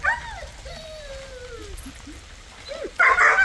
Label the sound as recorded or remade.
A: recorded